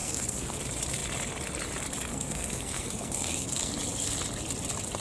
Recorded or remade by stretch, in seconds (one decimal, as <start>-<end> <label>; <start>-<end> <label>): 0.0-0.6 remade; 0.6-2.1 recorded; 2.1-3.7 remade; 3.7-5.0 recorded